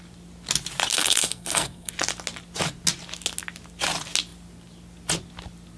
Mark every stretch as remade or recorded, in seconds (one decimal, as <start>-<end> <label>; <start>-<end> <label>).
0.0-0.9 recorded; 0.9-1.9 remade; 1.9-5.8 recorded